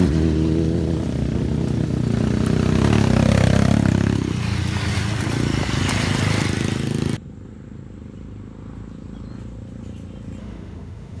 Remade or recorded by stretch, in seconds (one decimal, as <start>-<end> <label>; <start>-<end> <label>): 0.0-10.4 recorded; 10.4-11.2 remade

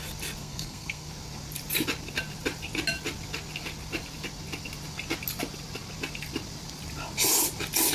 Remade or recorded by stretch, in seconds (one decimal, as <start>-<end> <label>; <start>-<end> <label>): 0.0-0.4 recorded; 0.4-1.1 remade; 1.1-7.9 recorded

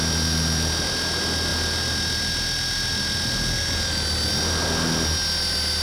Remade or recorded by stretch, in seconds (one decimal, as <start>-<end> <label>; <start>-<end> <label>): 0.0-5.8 recorded

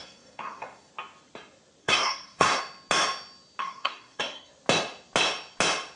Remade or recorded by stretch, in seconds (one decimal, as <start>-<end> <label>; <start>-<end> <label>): 0.0-0.9 remade; 0.9-1.8 recorded; 1.8-2.6 remade; 2.6-3.6 recorded; 3.6-4.5 remade; 4.5-6.0 recorded

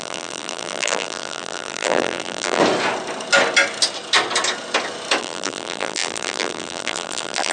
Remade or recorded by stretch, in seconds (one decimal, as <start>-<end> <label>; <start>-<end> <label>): 0.0-2.6 remade; 2.6-5.2 recorded; 5.2-7.5 remade